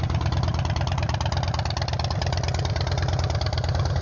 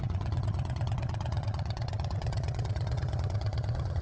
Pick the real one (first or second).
first